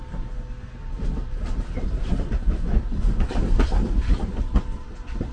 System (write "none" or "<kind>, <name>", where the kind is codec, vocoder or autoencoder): none